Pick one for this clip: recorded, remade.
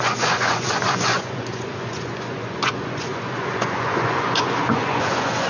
remade